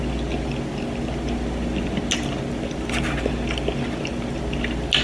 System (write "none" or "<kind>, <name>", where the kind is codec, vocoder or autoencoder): none